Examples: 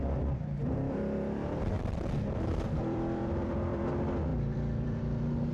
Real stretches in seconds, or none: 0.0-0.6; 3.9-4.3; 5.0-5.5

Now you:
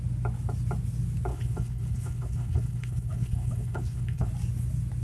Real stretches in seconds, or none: 0.0-1.3; 4.3-5.0

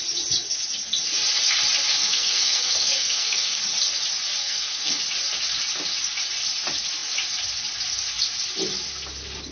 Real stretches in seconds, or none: 0.0-2.0; 3.6-4.4; 5.0-9.5

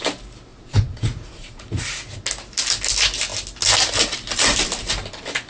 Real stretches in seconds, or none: 0.0-0.5; 2.0-5.5

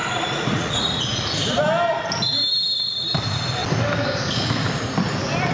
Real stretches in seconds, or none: 1.3-5.5